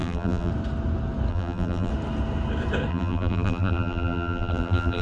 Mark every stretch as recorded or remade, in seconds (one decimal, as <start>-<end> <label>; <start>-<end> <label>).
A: 0.0-0.5 remade; 0.5-1.3 recorded; 1.3-1.9 remade; 1.9-2.9 recorded; 2.9-5.0 remade